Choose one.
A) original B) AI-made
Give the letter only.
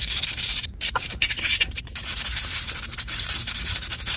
B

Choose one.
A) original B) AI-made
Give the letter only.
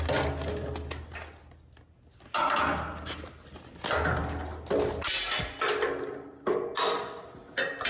A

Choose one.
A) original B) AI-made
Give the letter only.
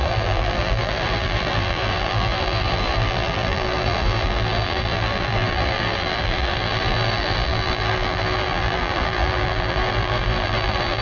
B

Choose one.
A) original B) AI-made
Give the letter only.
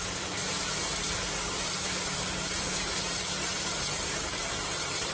B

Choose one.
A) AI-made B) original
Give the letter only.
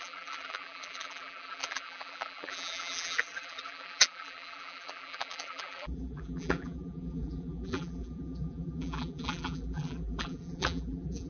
A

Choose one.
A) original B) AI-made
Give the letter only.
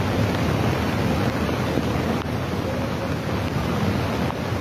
A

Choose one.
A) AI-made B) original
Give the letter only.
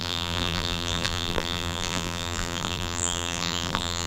A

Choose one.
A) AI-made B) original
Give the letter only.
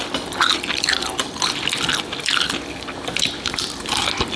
B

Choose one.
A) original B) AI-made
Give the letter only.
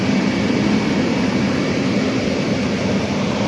B